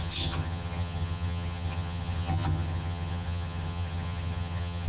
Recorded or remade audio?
remade